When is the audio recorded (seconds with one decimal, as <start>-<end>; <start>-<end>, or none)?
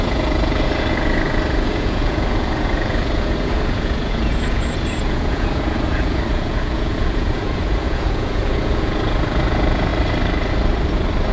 9.9-11.3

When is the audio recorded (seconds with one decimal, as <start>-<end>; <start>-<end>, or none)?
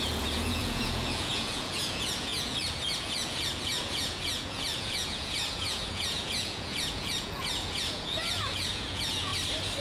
9.3-9.8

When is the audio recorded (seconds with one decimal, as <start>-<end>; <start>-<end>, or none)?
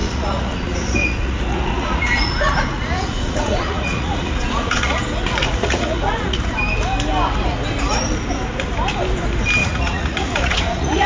5.0-5.4; 6.5-9.6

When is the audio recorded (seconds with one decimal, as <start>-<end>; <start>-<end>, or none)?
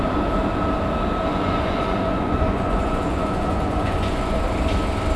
0.0-1.3; 4.4-5.2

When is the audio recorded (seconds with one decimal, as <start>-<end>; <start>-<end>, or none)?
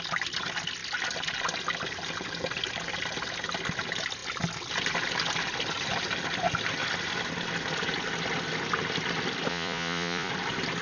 0.0-9.5; 10.3-10.8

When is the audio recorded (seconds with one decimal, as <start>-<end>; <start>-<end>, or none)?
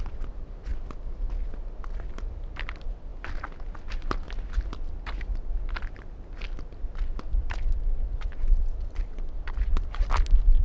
0.0-10.6